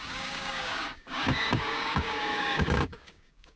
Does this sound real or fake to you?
fake